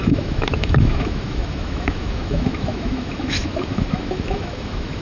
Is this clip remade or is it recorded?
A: remade